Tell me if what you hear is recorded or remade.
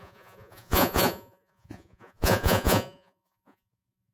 remade